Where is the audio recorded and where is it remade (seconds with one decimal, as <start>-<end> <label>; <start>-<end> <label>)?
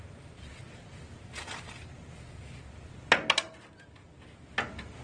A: 0.0-5.0 recorded